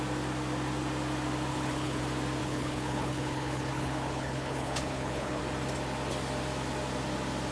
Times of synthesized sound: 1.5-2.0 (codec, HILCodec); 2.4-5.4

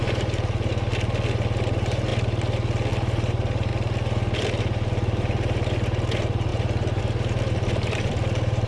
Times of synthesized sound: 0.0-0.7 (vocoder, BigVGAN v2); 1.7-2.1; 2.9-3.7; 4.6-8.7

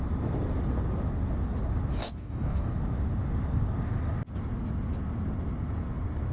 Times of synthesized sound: 2.0-2.7 (codec, DAC)

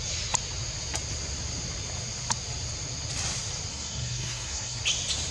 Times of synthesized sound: 3.7-4.8 (codec, SNAC)

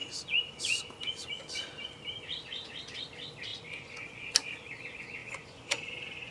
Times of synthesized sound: 3.5-4.3 (vocoder, Vocos); 5.2-6.3

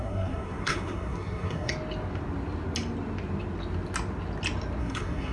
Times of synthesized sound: 0.0-1.7 (codec, SNAC); 4.8-5.3

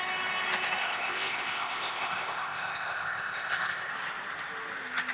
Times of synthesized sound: 0.8-3.9 (codec, ZipCodec)